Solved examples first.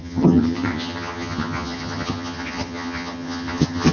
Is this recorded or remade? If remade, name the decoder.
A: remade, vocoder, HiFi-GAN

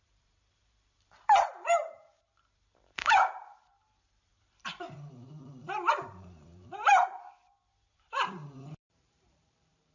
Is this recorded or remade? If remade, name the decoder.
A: remade, vocoder, BigVGAN v2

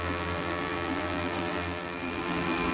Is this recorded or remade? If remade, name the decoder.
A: remade, vocoder, BigVGAN v2